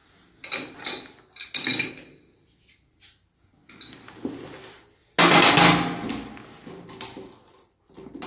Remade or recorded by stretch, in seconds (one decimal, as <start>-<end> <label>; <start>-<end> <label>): 0.0-8.3 recorded